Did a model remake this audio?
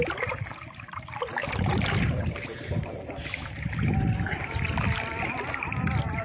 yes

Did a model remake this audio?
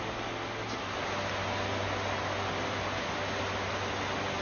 no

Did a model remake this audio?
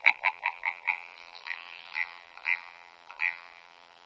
yes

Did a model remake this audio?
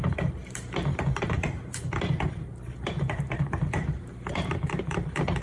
yes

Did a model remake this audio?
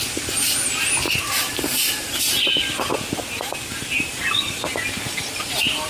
no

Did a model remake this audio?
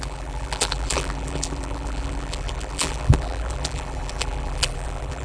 yes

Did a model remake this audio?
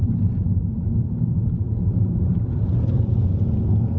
yes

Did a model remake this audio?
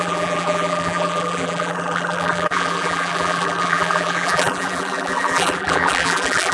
yes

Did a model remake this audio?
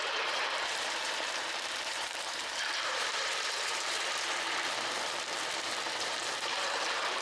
yes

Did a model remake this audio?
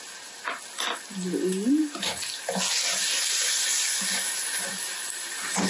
no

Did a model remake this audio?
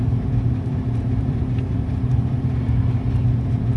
yes